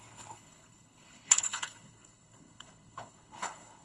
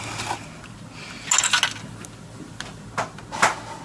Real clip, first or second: second